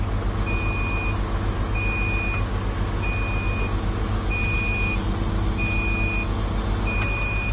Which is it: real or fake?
real